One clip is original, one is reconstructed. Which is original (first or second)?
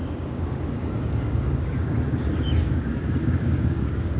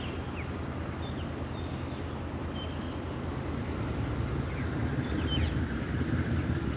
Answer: second